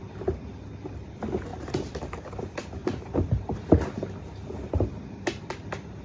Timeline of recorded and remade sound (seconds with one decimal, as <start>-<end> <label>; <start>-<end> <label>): 0.0-1.5 recorded; 1.5-2.4 remade; 2.4-2.8 recorded; 2.8-3.9 remade; 3.9-6.0 recorded